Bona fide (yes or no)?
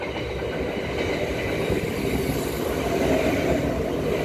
yes